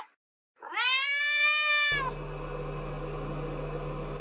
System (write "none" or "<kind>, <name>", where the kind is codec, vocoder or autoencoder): none